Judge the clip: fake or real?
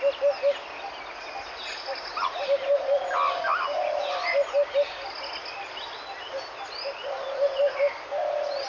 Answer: real